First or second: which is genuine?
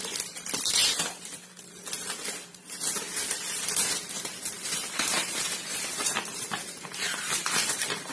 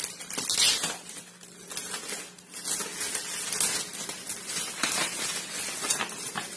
second